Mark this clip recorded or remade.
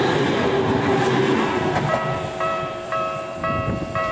remade